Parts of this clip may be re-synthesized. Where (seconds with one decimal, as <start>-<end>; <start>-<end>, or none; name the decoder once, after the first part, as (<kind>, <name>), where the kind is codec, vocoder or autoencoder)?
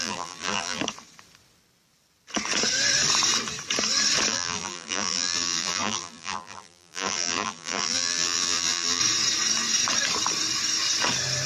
0.0-0.8 (vocoder, BigVGAN v2); 4.3-9.0